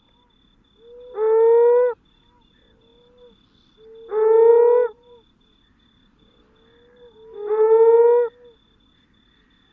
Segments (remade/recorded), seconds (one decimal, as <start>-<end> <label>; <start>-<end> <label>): 0.0-9.7 recorded